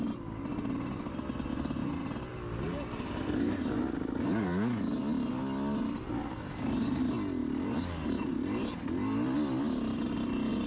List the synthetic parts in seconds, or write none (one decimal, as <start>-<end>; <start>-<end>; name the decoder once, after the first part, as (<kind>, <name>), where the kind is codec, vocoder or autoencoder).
none